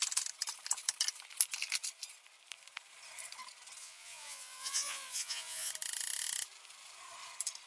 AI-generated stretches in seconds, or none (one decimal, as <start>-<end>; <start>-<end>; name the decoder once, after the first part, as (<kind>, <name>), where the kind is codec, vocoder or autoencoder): 3.8-5.7 (vocoder, Vocos)